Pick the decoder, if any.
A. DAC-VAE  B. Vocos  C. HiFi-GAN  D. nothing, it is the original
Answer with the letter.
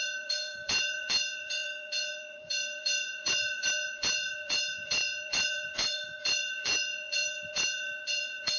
B